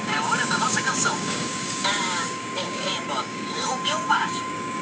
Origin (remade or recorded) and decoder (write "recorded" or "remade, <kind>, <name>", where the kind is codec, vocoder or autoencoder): remade, codec, DAC